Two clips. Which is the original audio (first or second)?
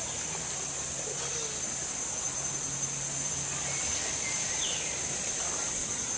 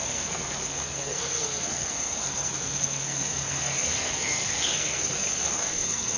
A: first